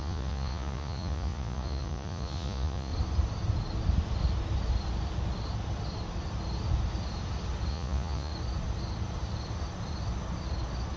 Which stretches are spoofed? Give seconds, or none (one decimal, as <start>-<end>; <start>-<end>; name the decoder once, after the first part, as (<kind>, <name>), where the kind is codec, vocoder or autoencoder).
0.0-2.9 (vocoder, Vocos); 7.7-8.3